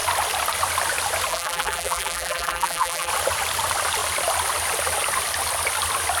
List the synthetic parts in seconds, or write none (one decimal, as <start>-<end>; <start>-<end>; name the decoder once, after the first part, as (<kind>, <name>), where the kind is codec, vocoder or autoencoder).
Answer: 1.3-3.1 (vocoder, BigVGAN v2)